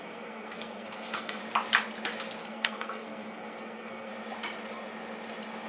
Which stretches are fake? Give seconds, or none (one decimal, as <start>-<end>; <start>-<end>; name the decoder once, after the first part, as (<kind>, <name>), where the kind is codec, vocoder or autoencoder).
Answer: 0.0-1.4 (codec, SNAC); 2.4-4.1